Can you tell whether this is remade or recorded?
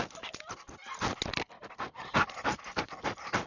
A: recorded